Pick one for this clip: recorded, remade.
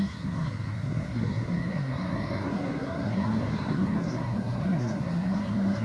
remade